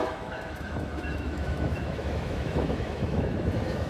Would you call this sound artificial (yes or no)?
yes